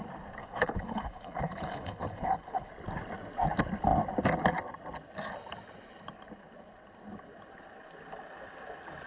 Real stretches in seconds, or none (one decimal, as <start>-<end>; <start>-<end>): 0.0-0.4; 2.7-9.1